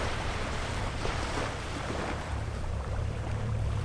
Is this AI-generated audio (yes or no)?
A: yes